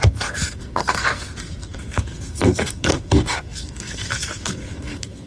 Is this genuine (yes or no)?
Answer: no